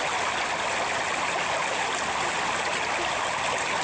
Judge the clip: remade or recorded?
recorded